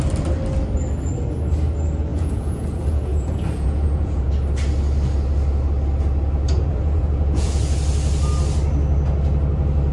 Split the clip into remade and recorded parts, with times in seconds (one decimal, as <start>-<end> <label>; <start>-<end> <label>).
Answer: 0.0-2.1 recorded; 2.1-4.3 remade; 4.3-6.7 recorded; 6.7-7.6 remade; 7.6-9.9 recorded